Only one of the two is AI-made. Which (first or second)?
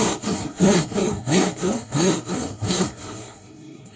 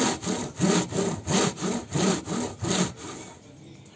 first